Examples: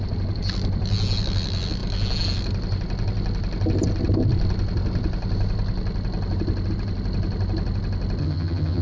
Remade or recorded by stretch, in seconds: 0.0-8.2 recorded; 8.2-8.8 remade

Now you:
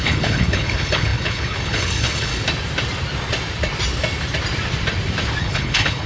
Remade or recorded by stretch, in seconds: 0.0-2.3 remade; 2.3-5.4 recorded; 5.4-6.1 remade

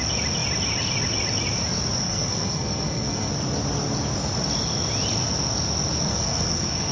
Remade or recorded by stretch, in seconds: 0.0-2.0 recorded; 2.0-3.3 remade; 3.3-6.1 recorded; 6.1-6.9 remade

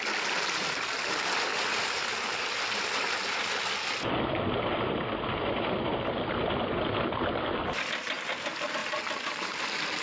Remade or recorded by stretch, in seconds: 0.0-10.0 recorded

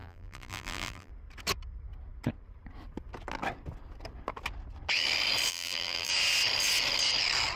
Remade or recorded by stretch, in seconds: 0.0-1.1 remade; 1.1-5.5 recorded; 5.5-6.1 remade; 6.1-7.6 recorded

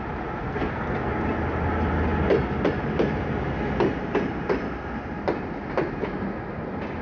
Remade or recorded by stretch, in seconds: 0.0-0.4 recorded; 0.4-1.1 remade; 1.1-7.0 recorded

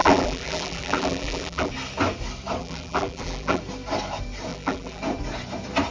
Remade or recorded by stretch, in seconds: 0.0-1.7 remade; 1.7-2.6 recorded; 2.6-3.6 remade; 3.6-4.5 recorded; 4.5-5.0 remade; 5.0-5.9 recorded

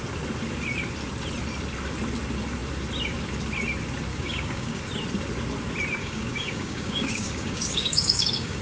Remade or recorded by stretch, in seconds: 0.0-4.1 recorded; 4.1-4.8 remade; 4.8-6.0 recorded; 6.0-8.6 remade